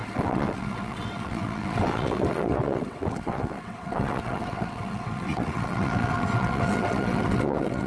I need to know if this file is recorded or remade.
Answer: remade